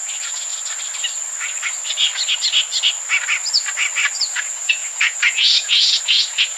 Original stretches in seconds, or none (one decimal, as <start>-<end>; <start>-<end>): 0.5-4.2